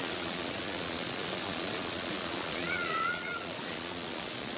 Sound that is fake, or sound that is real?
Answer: fake